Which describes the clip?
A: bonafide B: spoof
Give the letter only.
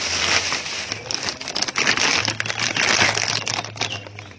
A